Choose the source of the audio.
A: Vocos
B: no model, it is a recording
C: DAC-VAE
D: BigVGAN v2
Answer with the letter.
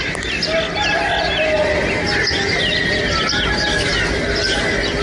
B